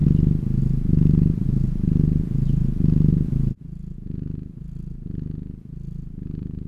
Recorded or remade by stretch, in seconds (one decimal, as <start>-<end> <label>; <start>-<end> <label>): 0.0-6.7 recorded